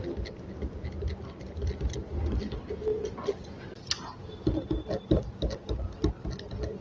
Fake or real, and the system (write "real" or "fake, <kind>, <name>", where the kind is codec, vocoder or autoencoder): real